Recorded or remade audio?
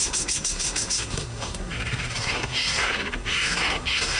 remade